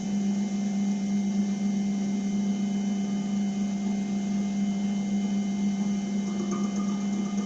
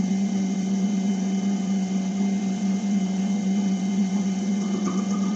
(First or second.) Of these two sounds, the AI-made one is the second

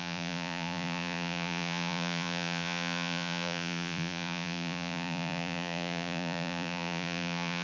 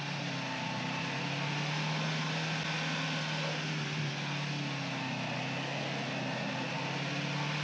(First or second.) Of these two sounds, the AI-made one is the first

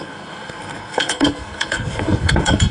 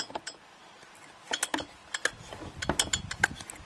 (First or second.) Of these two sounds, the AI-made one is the first